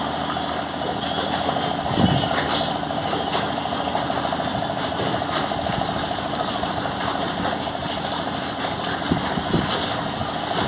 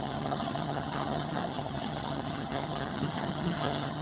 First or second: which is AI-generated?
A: second